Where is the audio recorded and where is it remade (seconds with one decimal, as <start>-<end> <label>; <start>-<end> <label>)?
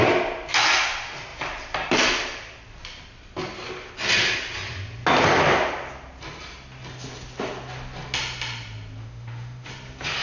0.0-9.0 recorded; 9.0-9.7 remade; 9.7-10.2 recorded